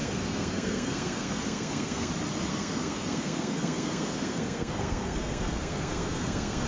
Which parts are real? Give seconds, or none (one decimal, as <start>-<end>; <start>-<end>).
2.1-2.5